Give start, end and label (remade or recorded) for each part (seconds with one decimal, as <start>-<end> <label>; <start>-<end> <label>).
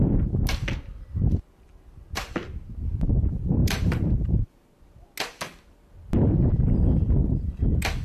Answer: 0.0-3.6 recorded; 3.6-4.7 remade; 4.7-8.0 recorded